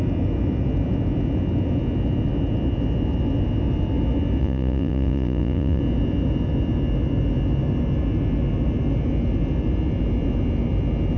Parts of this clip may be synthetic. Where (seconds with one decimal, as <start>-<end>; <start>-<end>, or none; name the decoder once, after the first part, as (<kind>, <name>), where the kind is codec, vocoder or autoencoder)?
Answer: 4.4-5.8 (vocoder, Vocos)